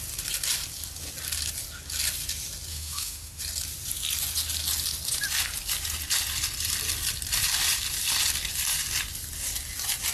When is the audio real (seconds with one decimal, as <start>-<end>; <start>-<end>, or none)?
0.0-2.7; 3.4-10.1